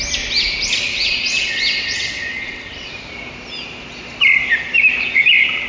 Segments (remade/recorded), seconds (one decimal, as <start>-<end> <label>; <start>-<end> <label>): 0.0-0.9 recorded; 0.9-2.9 remade; 2.9-5.7 recorded